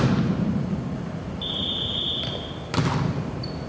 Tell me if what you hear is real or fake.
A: real